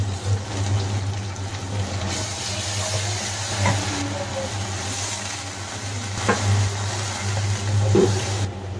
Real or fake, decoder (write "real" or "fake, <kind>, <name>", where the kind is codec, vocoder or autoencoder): real